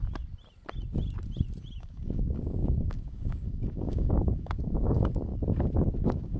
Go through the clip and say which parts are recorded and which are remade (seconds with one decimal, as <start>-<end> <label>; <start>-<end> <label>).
0.0-1.8 recorded; 1.8-5.3 remade; 5.3-6.0 recorded; 6.0-6.4 remade